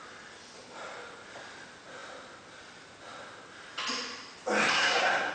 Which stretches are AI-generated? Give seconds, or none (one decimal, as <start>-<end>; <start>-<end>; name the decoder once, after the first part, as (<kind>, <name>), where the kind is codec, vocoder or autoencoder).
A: 4.7-5.3 (codec, SNAC)